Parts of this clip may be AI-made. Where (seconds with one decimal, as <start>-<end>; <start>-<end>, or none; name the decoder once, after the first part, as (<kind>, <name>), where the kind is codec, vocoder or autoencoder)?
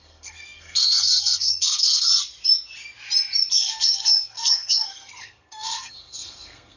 0.0-2.1 (codec, SNAC); 3.5-6.8